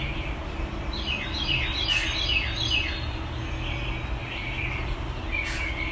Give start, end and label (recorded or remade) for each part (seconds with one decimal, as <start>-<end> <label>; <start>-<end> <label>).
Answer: 0.0-5.9 recorded